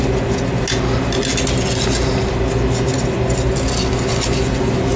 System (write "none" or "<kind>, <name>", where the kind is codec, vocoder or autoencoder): none